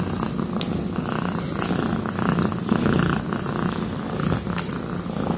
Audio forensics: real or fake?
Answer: real